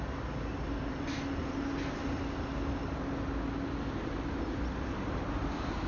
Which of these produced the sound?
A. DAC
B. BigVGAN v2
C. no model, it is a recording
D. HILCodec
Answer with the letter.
C